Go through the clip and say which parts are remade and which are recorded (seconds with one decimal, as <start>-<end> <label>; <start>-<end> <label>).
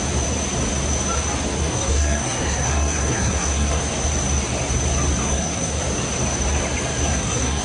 0.0-1.6 recorded; 1.6-3.8 remade; 3.8-5.2 recorded; 5.2-5.8 remade; 5.8-7.1 recorded; 7.1-7.6 remade